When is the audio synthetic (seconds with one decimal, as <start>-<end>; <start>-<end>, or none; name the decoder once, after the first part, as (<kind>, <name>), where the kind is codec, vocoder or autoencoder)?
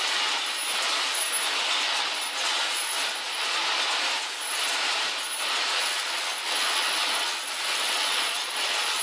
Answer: 5.8-9.0 (vocoder, Vocos)